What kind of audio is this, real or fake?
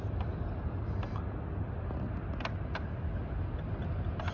real